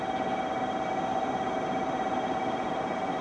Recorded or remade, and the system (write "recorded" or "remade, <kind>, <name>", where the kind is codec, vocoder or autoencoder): recorded